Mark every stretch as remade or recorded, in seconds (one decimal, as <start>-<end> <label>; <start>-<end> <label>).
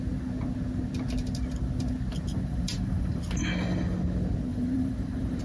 0.0-2.3 recorded; 2.3-3.2 remade; 3.2-4.5 recorded; 4.5-5.4 remade